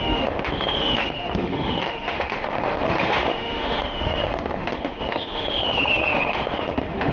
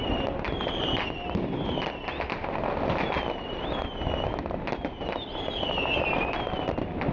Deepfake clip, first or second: first